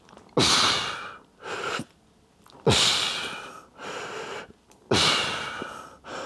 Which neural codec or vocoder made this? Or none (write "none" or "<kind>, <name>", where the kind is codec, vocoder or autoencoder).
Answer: none